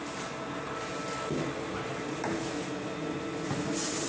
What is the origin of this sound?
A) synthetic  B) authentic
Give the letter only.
B